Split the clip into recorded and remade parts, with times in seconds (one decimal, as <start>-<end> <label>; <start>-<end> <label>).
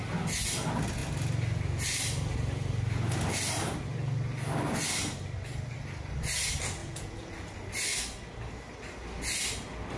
0.0-6.8 recorded; 6.8-7.3 remade; 7.3-10.0 recorded